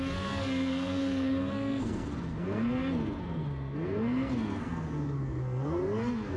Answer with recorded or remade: remade